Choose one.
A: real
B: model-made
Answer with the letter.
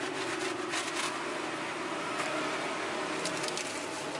A